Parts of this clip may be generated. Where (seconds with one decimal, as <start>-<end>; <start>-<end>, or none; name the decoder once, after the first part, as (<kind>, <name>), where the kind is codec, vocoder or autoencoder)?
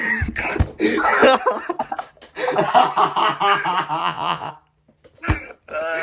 4.0-4.5 (vocoder, Vocos)